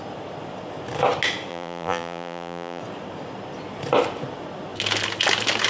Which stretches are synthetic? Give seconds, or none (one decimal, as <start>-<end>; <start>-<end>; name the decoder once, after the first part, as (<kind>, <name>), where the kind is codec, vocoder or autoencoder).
1.5-2.8 (vocoder, BigVGAN v2)